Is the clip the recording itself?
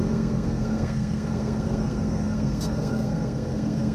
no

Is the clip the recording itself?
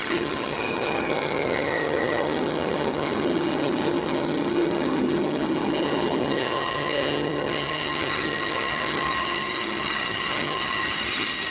no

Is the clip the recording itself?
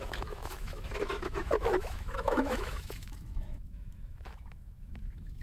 no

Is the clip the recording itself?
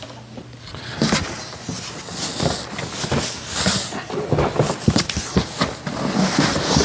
yes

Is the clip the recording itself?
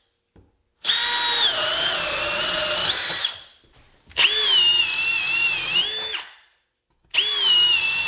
yes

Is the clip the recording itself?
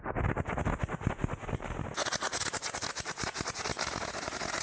yes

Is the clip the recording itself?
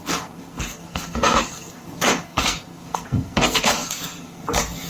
no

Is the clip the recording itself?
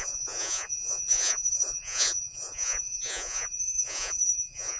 no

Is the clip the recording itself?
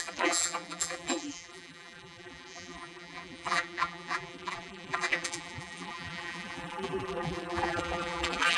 no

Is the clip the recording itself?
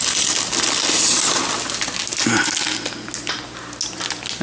yes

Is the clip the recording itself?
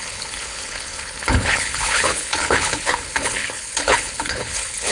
no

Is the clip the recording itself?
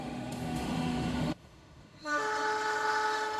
no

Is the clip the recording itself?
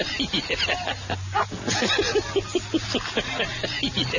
yes